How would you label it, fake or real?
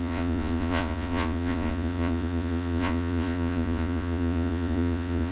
fake